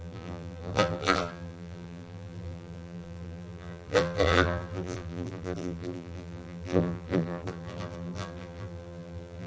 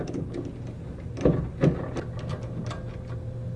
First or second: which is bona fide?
second